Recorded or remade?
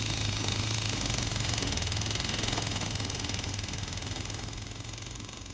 remade